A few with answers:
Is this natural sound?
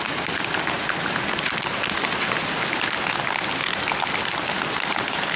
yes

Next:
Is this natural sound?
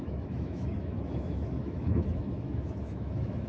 no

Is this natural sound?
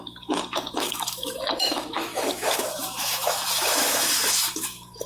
no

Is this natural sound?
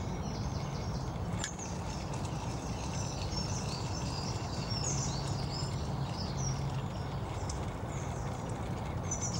yes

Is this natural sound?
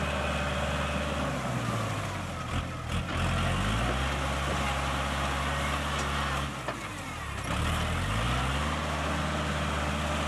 yes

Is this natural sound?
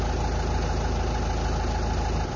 yes